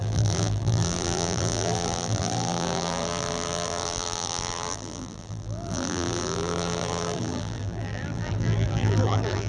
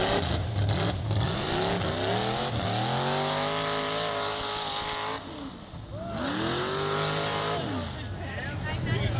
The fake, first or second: first